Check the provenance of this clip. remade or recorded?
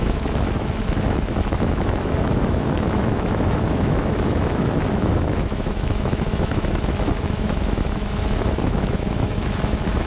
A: remade